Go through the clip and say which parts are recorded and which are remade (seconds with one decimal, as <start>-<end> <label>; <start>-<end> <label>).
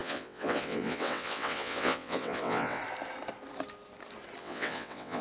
0.0-2.8 remade; 2.8-4.4 recorded; 4.4-5.2 remade